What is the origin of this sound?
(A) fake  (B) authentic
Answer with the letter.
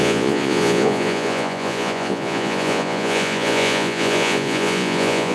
A